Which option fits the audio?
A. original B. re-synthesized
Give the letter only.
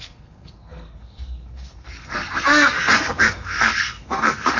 B